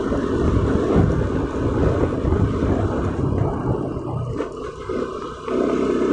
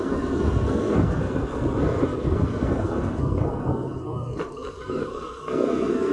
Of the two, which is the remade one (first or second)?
second